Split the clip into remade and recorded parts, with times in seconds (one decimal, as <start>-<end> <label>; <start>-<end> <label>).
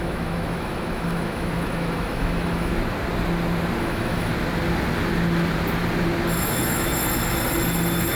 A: 0.0-2.7 remade; 2.7-3.8 recorded; 3.8-4.3 remade; 4.3-6.4 recorded; 6.4-7.0 remade; 7.0-8.1 recorded